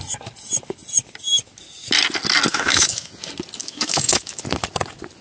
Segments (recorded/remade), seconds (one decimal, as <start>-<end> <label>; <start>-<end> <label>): 0.0-2.5 recorded; 2.5-3.1 remade; 3.1-3.6 recorded; 3.6-4.4 remade; 4.4-5.2 recorded